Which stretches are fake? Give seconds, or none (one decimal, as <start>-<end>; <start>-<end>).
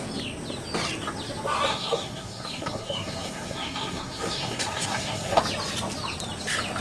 1.7-5.4